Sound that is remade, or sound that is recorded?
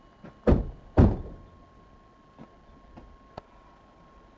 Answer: recorded